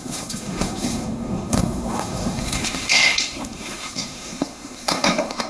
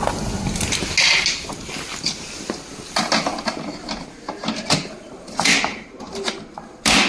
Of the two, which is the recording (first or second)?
second